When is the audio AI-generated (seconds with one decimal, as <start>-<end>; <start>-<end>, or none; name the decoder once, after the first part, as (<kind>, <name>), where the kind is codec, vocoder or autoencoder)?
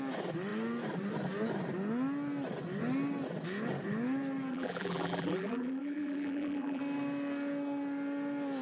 4.5-6.8 (vocoder, BigVGAN v2)